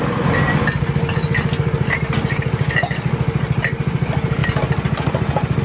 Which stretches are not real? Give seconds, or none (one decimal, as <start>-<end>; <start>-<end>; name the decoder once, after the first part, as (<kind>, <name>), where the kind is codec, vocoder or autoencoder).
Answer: 4.4-5.6 (vocoder, BigVGAN v2)